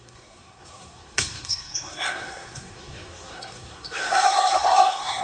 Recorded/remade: remade